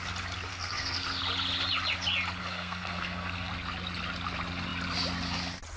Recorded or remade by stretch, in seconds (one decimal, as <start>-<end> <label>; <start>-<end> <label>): 0.0-0.5 recorded; 0.5-1.2 remade; 1.2-2.4 recorded; 2.4-3.5 remade; 3.5-5.8 recorded

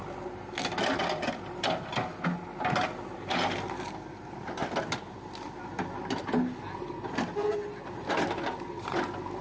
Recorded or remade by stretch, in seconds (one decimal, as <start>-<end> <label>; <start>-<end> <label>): 0.0-9.4 recorded

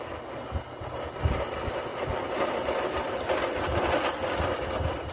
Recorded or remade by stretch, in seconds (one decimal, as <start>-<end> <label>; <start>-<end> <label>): 0.0-5.1 recorded

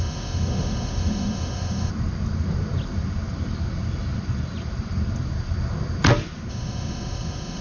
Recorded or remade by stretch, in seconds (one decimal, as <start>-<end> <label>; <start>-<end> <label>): 0.0-1.9 remade; 1.9-6.5 recorded; 6.5-7.6 remade

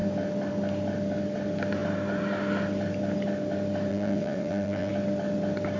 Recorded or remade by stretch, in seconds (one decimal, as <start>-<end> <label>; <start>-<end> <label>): 0.0-3.9 recorded; 3.9-4.9 remade; 4.9-5.8 recorded

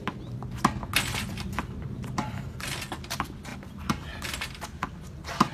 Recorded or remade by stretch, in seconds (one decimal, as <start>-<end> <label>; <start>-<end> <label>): 0.0-5.5 recorded

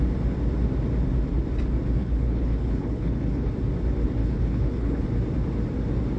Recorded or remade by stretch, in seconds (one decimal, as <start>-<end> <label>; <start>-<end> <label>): 0.0-2.0 recorded; 2.0-3.5 remade; 3.5-4.2 recorded; 4.2-5.0 remade; 5.0-6.2 recorded